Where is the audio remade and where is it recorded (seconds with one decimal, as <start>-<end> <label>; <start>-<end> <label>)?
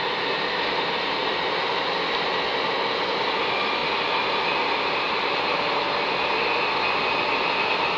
0.0-8.0 recorded